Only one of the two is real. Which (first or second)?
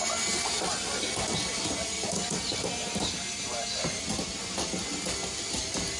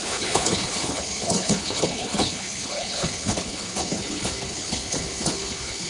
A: first